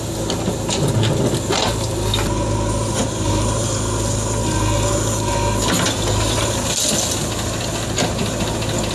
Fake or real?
real